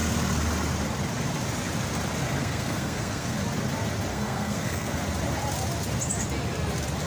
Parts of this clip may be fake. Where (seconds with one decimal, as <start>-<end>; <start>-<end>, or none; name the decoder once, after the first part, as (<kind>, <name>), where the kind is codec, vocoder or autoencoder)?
2.4-3.4 (codec, SNAC); 4.1-5.0